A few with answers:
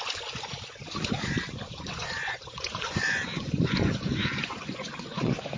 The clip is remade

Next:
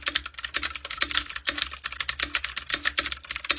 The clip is recorded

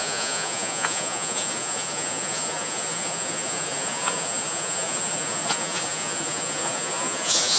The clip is remade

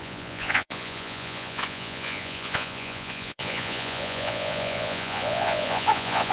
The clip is remade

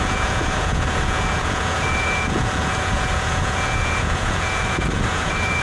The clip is remade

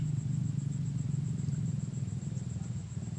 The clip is recorded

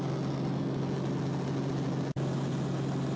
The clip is recorded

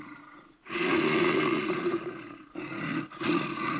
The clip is remade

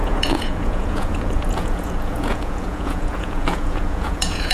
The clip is remade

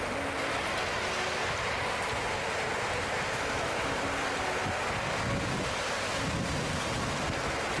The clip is recorded